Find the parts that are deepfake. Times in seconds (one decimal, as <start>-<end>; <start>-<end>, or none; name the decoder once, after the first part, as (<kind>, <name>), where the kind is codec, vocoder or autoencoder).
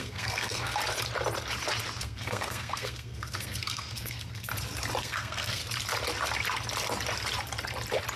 0.0-0.8 (codec, SNAC); 2.0-4.5; 5.0-5.6